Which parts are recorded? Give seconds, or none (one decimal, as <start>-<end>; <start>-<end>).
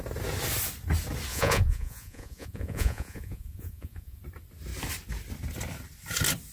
0.0-1.3; 4.2-6.5